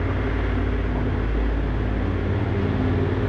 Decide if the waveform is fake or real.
real